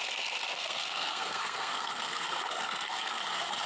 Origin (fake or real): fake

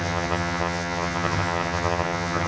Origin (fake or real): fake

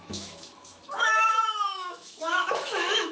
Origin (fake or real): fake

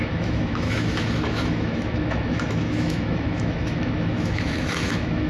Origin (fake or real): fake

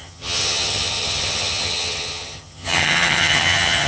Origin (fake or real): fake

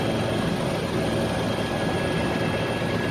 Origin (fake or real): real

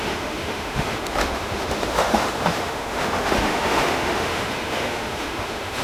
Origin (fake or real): fake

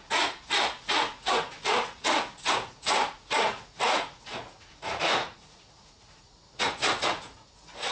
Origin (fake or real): fake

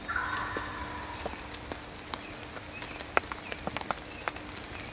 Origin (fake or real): real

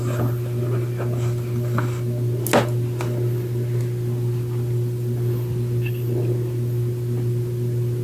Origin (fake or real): real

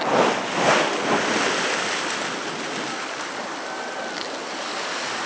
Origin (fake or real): real